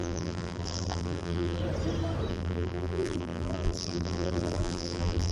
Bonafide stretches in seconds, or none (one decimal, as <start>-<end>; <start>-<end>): 1.6-2.3